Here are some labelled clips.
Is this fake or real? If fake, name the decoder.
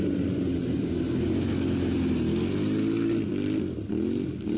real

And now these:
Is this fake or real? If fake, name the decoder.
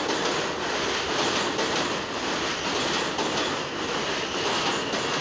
real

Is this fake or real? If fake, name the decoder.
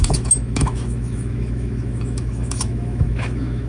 fake, autoencoder, DAC-VAE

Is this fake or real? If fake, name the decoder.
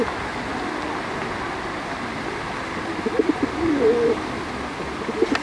real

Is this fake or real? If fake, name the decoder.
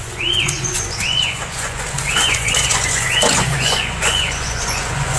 fake, vocoder, Vocos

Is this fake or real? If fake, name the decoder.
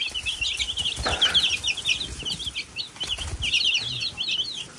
real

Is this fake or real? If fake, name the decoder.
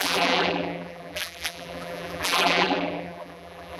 fake, vocoder, BigVGAN v2